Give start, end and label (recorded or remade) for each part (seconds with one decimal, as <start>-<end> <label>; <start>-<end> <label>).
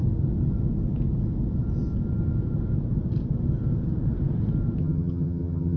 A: 0.0-4.8 recorded; 4.8-5.8 remade